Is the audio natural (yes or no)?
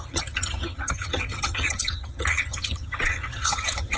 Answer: no